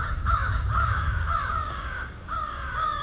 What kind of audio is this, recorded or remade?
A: remade